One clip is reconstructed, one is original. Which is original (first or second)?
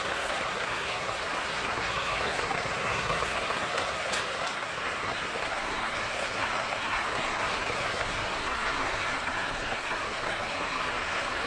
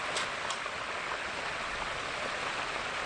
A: second